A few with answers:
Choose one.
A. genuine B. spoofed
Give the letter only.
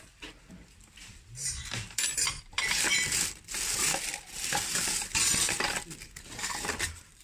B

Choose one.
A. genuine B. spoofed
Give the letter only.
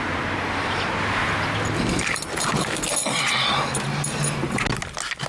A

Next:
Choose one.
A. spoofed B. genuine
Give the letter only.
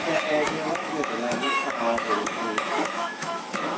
A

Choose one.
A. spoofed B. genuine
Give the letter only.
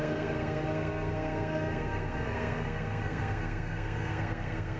A